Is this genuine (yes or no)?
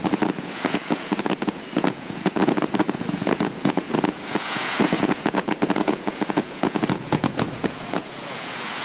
no